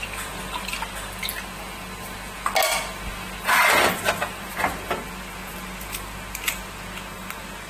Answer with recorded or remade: recorded